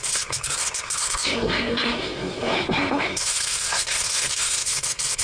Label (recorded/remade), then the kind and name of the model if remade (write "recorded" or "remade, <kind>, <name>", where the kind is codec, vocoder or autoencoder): remade, codec, SNAC